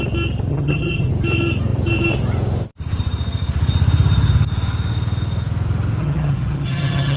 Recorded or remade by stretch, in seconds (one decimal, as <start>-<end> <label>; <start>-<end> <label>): 0.0-0.5 recorded; 0.5-1.1 remade; 1.1-6.0 recorded; 6.0-7.2 remade